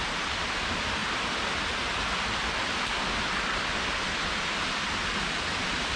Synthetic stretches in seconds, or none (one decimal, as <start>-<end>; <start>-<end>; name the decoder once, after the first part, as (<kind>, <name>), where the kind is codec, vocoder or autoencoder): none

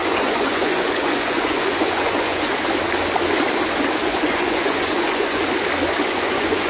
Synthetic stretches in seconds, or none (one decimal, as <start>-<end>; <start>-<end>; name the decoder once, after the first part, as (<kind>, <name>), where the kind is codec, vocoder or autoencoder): 0.0-2.5 (vocoder, Vocos); 4.0-5.4; 6.0-6.7

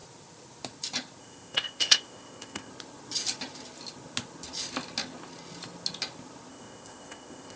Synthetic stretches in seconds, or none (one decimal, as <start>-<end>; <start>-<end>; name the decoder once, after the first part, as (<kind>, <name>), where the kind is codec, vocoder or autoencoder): 1.2-2.7 (codec, ZipCodec); 6.5-7.6